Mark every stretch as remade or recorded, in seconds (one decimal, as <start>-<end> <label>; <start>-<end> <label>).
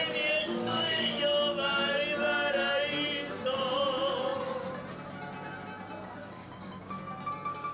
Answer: 0.0-0.4 recorded; 0.4-1.2 remade; 1.2-6.2 recorded; 6.2-7.0 remade; 7.0-7.7 recorded